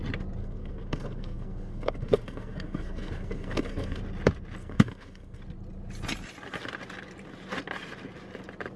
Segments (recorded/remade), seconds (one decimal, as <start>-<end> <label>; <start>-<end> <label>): 0.0-0.4 recorded; 0.4-4.0 remade; 4.0-4.6 recorded; 4.6-5.4 remade; 5.4-8.8 recorded